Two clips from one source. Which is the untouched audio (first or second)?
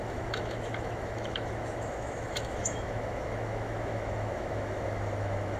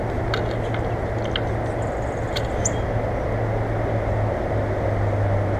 second